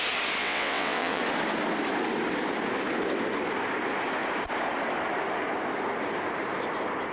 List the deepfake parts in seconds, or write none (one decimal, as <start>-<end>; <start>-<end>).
0.4-1.2